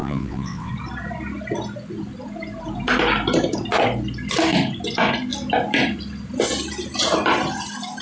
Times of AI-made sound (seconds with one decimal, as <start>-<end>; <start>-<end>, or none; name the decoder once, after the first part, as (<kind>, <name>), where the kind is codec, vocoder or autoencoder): 0.0-0.7 (vocoder, WaveNeXt)